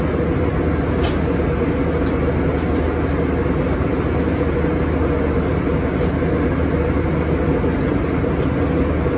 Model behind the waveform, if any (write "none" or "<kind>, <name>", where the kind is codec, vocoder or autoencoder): none